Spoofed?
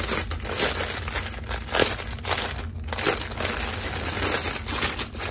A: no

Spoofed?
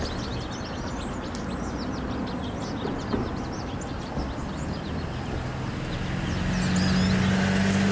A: no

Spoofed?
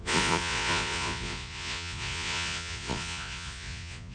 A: yes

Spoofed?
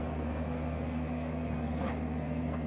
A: yes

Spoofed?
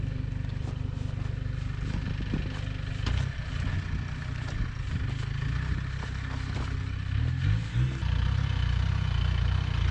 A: no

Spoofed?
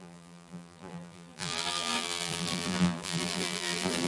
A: yes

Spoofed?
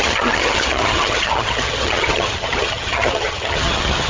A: yes